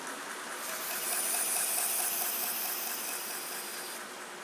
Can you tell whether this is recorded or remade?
recorded